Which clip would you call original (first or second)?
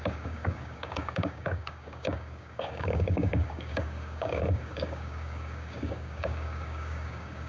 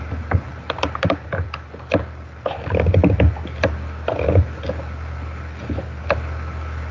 second